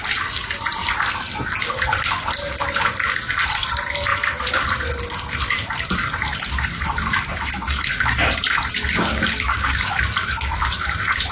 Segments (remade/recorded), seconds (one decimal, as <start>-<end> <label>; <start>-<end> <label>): 0.0-9.1 recorded; 9.1-10.0 remade; 10.0-11.3 recorded